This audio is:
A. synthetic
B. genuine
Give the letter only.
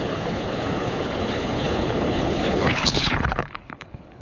A